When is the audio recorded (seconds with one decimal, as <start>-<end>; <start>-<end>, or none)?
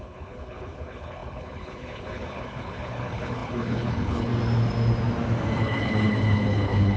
4.3-5.6